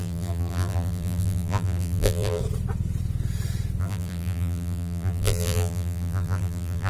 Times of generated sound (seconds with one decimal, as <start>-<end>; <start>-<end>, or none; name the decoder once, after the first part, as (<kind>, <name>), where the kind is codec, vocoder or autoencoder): 0.0-2.4 (vocoder, BigVGAN v2); 3.8-6.9